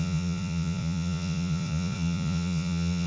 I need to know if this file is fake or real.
fake